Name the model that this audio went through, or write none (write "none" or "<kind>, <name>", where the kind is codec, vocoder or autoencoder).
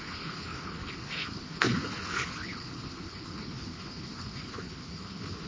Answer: codec, HILCodec